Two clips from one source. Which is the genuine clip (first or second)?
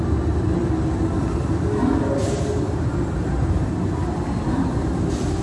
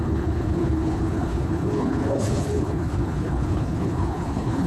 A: first